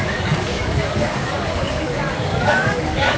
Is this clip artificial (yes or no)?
yes